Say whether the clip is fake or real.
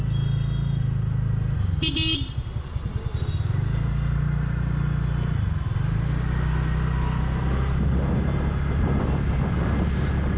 real